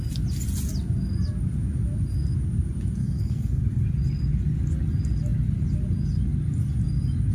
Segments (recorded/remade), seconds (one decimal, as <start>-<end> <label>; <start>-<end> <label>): 0.0-3.0 recorded; 3.0-3.6 remade; 3.6-7.3 recorded